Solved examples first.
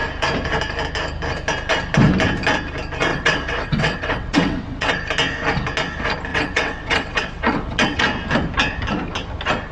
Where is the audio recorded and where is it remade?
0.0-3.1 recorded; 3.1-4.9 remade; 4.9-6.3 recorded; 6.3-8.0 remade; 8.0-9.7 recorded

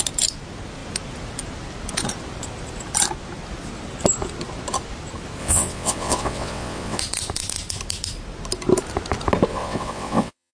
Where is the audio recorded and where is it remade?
0.0-5.4 recorded; 5.4-7.0 remade; 7.0-9.5 recorded; 9.5-10.5 remade